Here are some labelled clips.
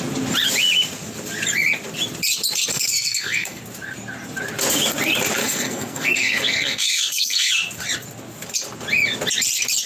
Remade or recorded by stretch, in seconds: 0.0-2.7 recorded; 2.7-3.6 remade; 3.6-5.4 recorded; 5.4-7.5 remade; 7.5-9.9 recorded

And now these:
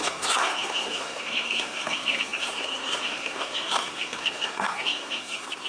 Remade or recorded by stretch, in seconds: 0.0-5.7 remade

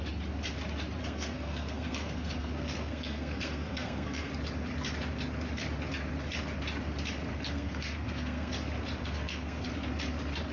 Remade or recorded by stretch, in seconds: 0.0-1.0 recorded; 1.0-4.3 remade; 4.3-7.3 recorded; 7.3-8.5 remade; 8.5-9.0 recorded; 9.0-9.7 remade; 9.7-10.5 recorded